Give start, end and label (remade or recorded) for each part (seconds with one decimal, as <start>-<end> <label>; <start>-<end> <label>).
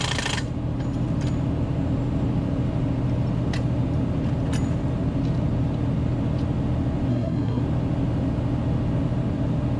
0.0-7.1 recorded; 7.1-7.6 remade; 7.6-9.8 recorded